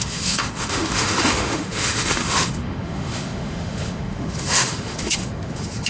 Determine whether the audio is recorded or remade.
remade